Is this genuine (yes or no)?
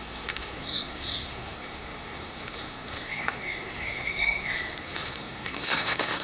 no